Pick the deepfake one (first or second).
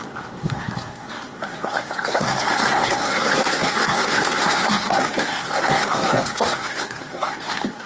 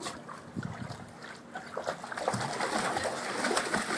first